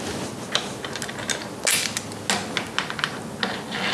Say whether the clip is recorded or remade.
recorded